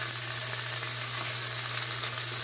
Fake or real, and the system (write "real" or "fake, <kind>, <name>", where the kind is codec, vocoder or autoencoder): real